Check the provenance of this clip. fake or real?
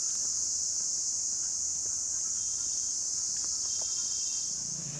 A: real